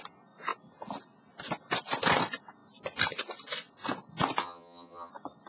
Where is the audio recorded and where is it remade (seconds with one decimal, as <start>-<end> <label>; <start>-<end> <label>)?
0.0-4.4 recorded; 4.4-5.1 remade; 5.1-5.5 recorded